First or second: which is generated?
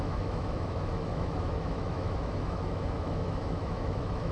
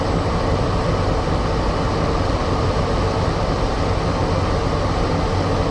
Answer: first